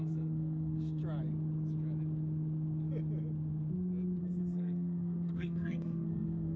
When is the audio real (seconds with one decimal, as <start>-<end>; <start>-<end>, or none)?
1.0-4.2

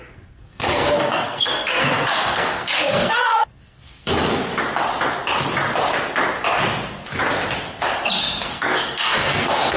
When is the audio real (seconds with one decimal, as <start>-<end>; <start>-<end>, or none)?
4.5-8.2

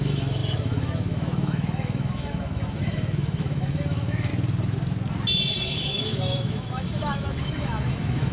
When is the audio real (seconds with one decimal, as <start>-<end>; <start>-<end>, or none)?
4.3-5.6

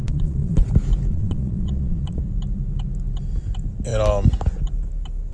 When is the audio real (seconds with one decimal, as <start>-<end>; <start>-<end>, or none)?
0.7-1.1; 2.2-5.3